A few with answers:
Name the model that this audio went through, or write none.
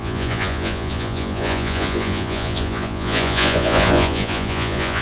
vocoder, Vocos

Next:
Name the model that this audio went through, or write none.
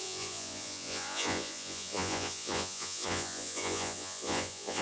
vocoder, Vocos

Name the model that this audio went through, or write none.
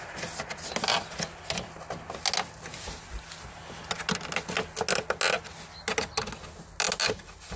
none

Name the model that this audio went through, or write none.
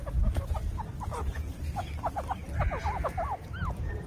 none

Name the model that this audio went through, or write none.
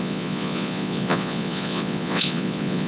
vocoder, Vocos